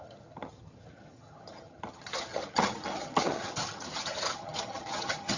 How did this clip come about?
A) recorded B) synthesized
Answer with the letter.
B